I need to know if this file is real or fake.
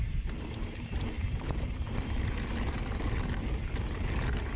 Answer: real